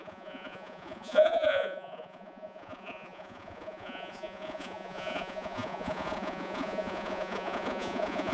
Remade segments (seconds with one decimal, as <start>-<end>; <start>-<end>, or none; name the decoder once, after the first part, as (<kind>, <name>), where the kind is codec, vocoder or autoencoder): 0.0-8.3 (vocoder, Vocos)